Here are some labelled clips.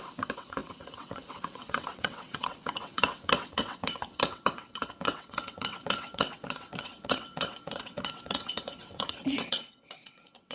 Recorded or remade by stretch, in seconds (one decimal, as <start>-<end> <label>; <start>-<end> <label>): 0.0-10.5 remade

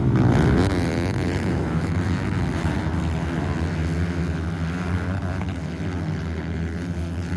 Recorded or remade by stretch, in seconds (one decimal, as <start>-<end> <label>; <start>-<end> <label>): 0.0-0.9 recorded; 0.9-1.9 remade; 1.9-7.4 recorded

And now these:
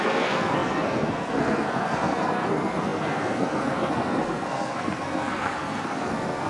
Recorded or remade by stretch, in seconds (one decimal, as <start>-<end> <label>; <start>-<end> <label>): 0.0-6.5 remade